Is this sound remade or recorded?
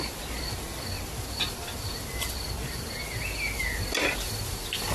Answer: recorded